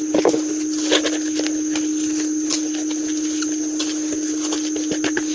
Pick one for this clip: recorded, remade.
recorded